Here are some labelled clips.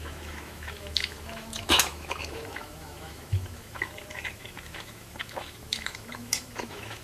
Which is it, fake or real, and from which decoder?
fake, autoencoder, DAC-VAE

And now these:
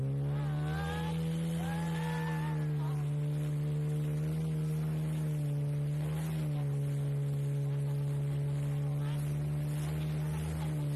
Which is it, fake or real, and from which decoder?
real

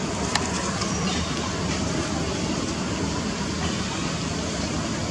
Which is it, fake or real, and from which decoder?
real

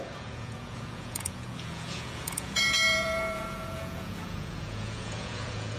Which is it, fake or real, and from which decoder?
fake, vocoder, Vocos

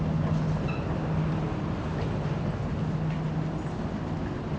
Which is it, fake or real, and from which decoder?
real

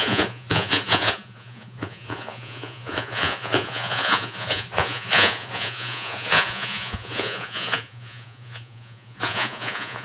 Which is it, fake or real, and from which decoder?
fake, vocoder, Vocos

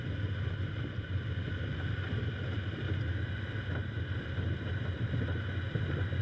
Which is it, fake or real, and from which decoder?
real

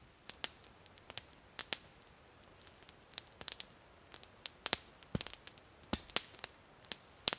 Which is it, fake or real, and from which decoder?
real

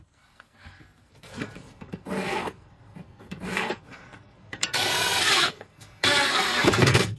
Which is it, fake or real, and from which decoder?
fake, codec, SNAC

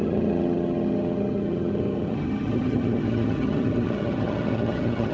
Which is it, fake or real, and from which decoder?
fake, vocoder, HiFi-GAN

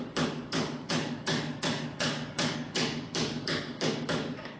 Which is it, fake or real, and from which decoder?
fake, codec, DAC